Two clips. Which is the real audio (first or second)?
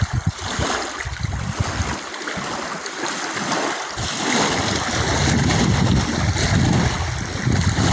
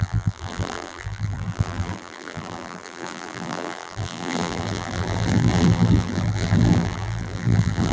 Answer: first